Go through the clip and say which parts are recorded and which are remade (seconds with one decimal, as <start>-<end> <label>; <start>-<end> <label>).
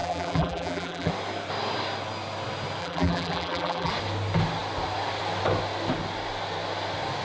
0.0-1.1 remade; 1.1-2.8 recorded; 2.8-3.9 remade; 3.9-7.2 recorded